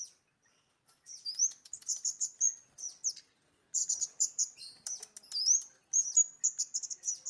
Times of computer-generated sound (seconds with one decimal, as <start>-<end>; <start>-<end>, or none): 3.8-4.6